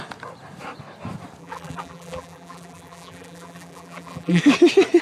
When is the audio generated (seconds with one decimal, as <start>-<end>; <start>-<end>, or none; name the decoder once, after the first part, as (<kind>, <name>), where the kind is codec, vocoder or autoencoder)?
1.4-4.4 (vocoder, BigVGAN v2)